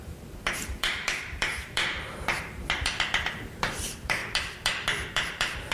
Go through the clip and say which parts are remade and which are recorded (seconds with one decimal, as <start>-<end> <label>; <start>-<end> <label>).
0.0-2.6 remade; 2.6-3.8 recorded; 3.8-4.2 remade; 4.2-5.1 recorded; 5.1-5.7 remade